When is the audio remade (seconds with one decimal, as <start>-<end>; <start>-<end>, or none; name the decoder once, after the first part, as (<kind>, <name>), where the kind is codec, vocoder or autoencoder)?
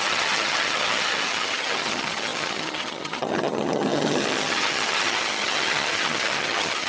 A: 0.0-6.9 (vocoder, HiFi-GAN)